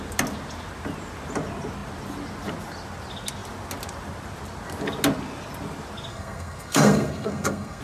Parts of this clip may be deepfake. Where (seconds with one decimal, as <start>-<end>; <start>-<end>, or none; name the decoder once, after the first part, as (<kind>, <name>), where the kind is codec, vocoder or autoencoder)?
6.1-7.8 (codec, SNAC)